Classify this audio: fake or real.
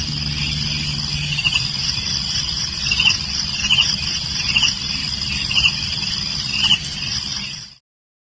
real